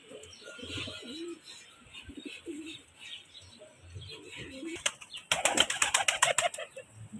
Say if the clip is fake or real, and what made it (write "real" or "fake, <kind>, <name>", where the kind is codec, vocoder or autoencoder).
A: real